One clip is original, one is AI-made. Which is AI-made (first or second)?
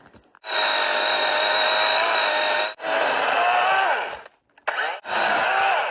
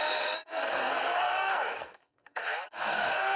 second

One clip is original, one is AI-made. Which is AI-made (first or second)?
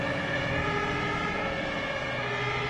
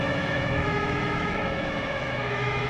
second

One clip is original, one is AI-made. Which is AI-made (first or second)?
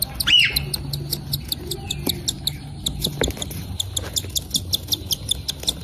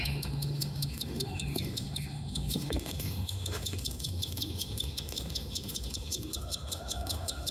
second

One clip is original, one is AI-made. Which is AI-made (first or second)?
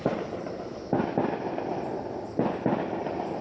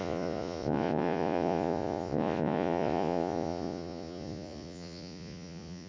second